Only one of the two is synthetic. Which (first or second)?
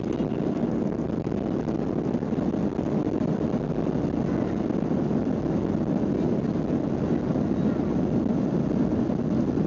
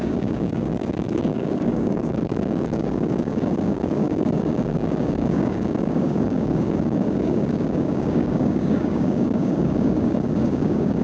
second